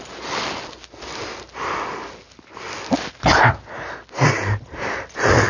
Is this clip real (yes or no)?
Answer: yes